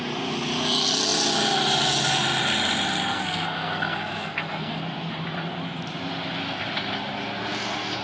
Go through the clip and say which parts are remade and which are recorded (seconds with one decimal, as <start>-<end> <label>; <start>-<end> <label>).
0.0-3.1 recorded; 3.1-4.8 remade; 4.8-8.0 recorded